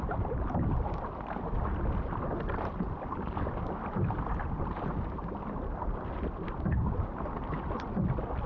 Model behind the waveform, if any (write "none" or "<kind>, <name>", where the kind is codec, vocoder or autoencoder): none